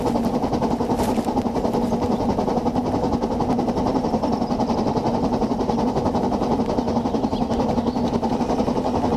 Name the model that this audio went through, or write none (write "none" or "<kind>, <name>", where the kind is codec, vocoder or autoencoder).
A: none